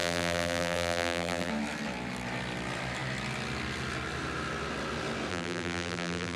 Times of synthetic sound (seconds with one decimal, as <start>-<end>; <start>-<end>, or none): 0.0-1.5; 5.3-6.4